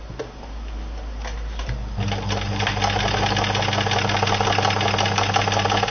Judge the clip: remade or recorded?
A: recorded